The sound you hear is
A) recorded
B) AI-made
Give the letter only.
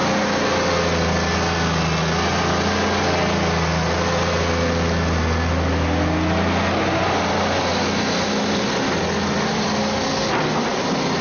A